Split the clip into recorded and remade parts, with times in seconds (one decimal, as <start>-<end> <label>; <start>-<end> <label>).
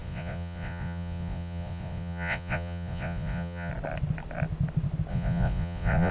0.0-3.7 remade; 3.7-5.1 recorded; 5.1-6.1 remade